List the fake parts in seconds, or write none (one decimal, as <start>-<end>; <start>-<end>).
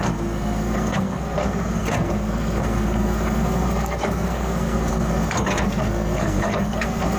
0.0-7.2